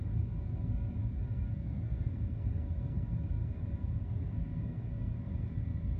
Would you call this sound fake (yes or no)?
yes